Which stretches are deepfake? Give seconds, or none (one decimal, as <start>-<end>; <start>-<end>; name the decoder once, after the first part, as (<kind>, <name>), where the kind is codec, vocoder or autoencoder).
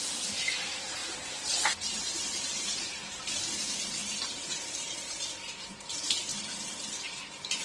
1.0-3.2 (vocoder, BigVGAN v2); 4.0-5.5